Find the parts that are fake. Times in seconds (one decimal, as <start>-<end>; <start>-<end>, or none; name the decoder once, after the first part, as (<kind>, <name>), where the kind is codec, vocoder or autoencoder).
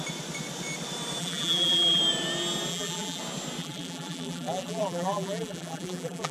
1.2-2.0 (vocoder, BigVGAN v2); 2.7-3.2; 3.6-6.3